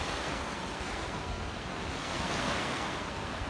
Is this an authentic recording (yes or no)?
no